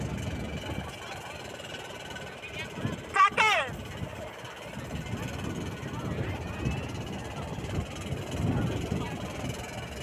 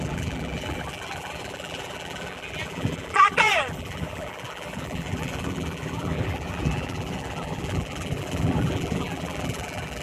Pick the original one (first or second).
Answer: first